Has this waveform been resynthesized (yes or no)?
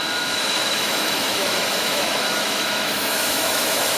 yes